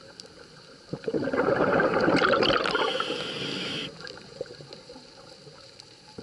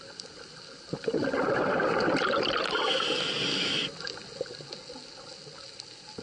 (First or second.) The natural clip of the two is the second